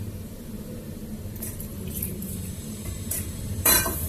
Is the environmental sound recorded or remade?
remade